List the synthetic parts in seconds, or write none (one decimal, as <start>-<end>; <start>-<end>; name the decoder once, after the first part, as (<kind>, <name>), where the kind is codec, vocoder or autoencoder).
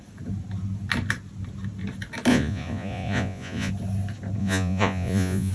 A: 2.3-3.7 (vocoder, Vocos); 4.4-5.5